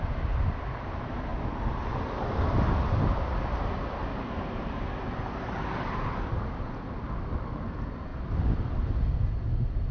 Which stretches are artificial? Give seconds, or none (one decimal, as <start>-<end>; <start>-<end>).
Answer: none